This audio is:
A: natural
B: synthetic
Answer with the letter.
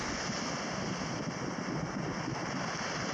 A